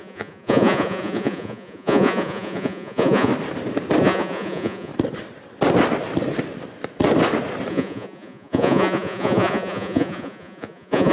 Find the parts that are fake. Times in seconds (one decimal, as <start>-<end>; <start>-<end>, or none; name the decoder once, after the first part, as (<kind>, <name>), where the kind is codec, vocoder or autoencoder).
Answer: 0.0-3.3 (vocoder, Vocos); 4.0-4.9; 7.7-11.1